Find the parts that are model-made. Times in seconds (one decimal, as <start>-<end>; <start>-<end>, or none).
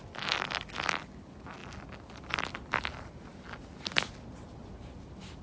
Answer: none